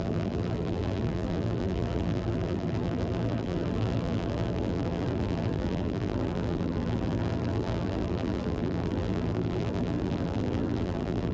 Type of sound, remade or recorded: remade